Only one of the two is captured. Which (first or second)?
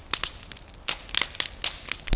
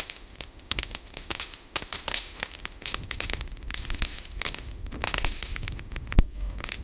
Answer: first